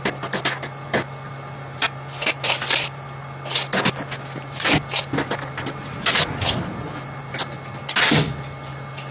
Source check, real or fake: real